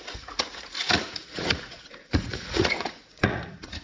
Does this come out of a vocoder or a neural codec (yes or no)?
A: yes